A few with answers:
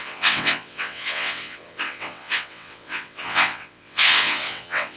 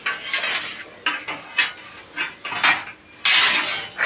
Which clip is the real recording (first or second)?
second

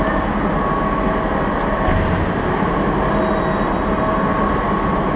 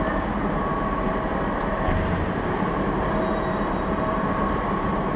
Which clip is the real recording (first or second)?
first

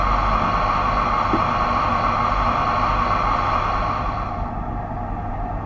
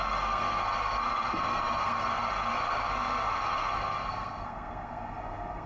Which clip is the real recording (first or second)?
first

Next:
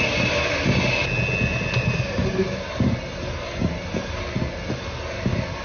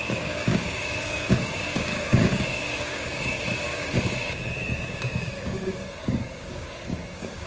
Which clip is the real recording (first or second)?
first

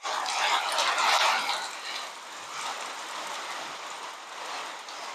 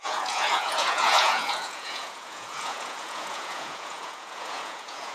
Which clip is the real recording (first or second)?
first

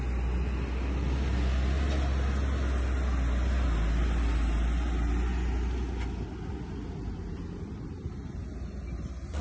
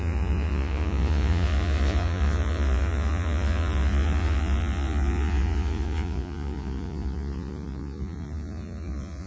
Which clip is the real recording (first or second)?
first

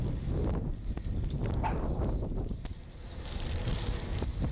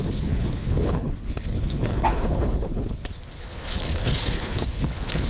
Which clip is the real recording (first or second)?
first